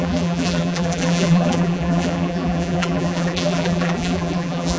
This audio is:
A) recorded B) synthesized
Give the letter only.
B